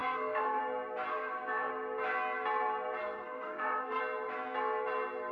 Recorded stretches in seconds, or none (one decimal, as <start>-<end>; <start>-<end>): 0.6-1.1; 1.7-3.0; 4.0-5.3

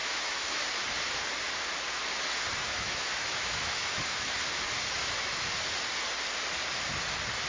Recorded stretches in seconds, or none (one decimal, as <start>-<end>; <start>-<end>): 0.8-2.6; 4.4-5.0; 5.5-7.5

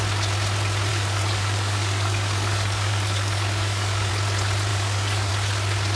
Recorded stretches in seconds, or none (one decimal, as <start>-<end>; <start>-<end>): 0.0-0.9; 4.1-4.7; 5.3-6.0

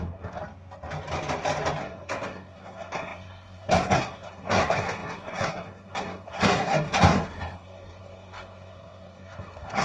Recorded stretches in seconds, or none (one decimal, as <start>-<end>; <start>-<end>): 0.4-1.8

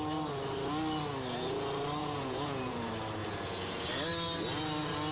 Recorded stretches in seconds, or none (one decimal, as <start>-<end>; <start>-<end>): 0.0-2.0; 2.8-3.2; 3.9-5.1